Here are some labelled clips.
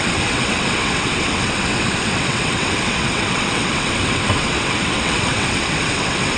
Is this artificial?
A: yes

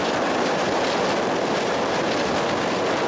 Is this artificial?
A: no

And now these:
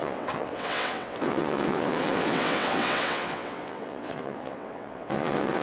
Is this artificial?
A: yes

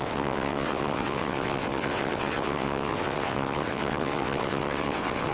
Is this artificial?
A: yes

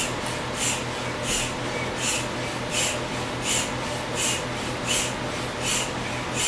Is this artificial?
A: no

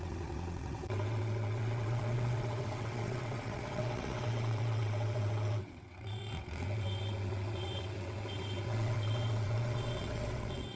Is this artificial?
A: yes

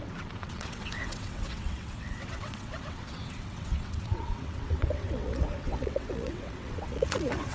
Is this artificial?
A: yes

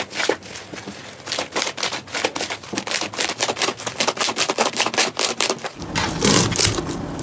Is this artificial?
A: no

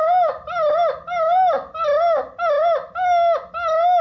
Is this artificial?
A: no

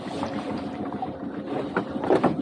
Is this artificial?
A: no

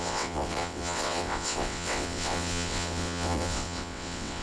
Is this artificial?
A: yes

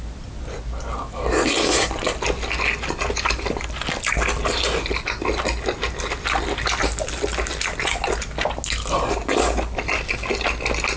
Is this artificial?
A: no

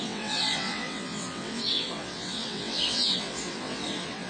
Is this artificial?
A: yes